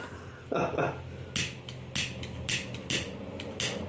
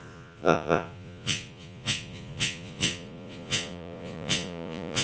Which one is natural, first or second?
first